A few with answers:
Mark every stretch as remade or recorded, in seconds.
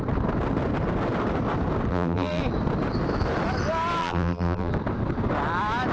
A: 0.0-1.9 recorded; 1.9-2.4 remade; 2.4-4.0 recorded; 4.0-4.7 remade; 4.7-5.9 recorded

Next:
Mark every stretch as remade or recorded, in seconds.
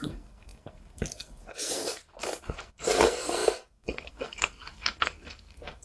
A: 0.0-5.8 remade